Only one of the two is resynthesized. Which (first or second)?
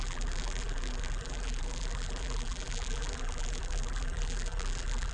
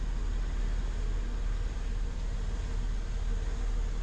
first